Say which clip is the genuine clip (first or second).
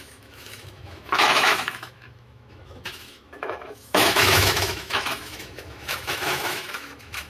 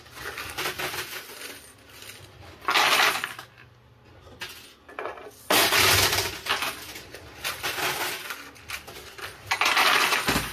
second